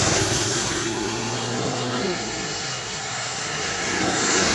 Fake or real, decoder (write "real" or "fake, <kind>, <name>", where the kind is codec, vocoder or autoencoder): fake, codec, SNAC